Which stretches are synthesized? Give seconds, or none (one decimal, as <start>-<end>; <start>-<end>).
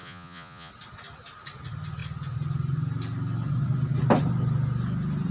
0.0-0.7